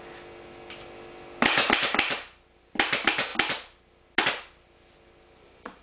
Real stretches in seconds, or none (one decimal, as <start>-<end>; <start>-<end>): 0.0-5.8